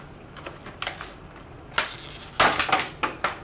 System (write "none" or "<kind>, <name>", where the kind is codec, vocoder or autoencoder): none